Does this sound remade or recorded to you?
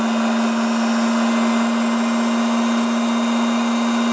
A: recorded